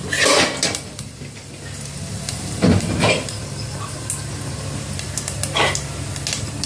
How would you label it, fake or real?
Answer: real